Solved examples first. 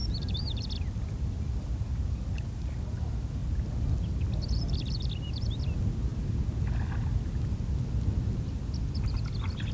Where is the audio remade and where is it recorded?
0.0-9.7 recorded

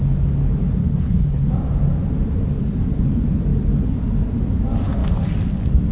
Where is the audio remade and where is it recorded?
0.0-0.8 recorded; 0.8-1.5 remade; 1.5-5.9 recorded

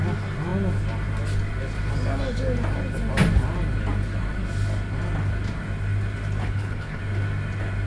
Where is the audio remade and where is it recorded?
0.0-6.4 recorded; 6.4-7.0 remade; 7.0-7.9 recorded